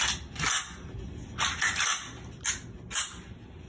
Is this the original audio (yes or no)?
yes